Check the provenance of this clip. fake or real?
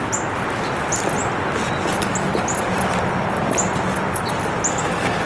real